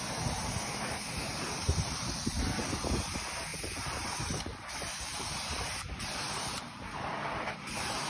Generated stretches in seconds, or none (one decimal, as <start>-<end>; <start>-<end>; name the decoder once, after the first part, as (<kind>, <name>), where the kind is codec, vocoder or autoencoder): 1.6-2.2 (vocoder, BigVGAN v2); 3.5-7.1